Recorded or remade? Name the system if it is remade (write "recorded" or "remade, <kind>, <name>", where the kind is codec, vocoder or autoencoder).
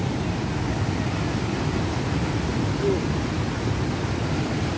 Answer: recorded